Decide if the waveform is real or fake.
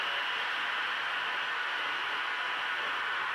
real